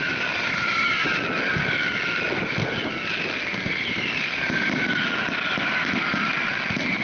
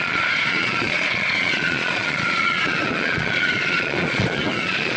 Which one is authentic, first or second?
first